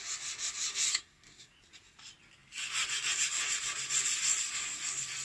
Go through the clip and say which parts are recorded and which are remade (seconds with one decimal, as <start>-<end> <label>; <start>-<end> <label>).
0.0-0.9 recorded; 0.9-1.5 remade; 1.5-5.2 recorded